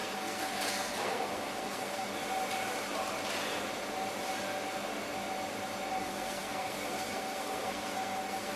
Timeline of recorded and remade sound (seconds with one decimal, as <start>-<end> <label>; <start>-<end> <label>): 0.0-2.1 remade; 2.1-6.0 recorded; 6.0-8.6 remade